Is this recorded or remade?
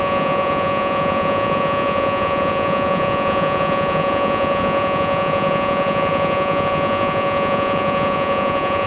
remade